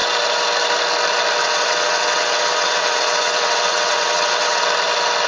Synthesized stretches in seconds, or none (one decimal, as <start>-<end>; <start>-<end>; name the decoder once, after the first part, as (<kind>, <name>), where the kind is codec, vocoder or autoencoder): 1.4-4.6 (vocoder, WaveNeXt)